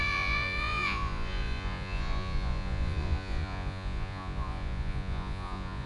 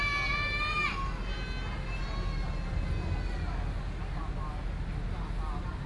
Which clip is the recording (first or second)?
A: second